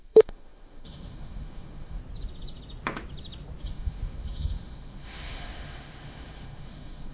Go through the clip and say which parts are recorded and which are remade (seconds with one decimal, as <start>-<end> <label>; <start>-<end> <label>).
0.0-2.0 remade; 2.0-3.6 recorded; 3.6-7.1 remade